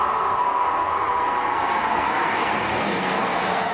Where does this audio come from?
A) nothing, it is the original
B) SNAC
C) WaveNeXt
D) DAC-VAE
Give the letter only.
B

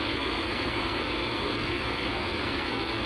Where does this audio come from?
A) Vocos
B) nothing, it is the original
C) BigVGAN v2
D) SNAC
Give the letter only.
D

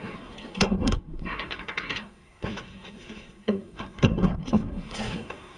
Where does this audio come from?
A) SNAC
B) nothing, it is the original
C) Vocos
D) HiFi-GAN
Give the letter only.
A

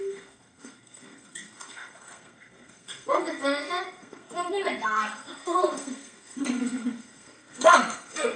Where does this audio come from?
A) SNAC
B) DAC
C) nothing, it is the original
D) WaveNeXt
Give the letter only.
A